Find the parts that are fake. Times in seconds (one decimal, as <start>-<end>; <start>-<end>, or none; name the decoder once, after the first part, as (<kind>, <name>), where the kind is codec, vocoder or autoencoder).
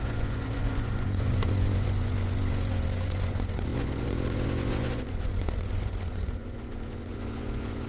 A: 0.0-7.9 (vocoder, Vocos)